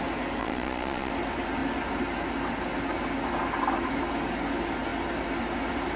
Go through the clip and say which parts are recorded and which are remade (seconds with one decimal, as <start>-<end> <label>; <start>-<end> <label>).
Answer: 0.0-0.4 recorded; 0.4-1.1 remade; 1.1-6.0 recorded